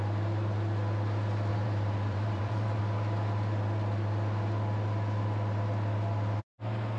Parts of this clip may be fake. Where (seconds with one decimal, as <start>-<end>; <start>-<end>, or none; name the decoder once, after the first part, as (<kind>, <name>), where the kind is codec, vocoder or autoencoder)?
1.5-2.8 (vocoder, BigVGAN v2)